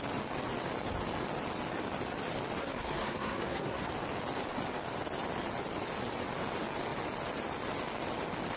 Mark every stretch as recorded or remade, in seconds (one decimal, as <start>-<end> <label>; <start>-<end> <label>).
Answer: 0.0-2.6 recorded; 2.6-3.9 remade; 3.9-8.6 recorded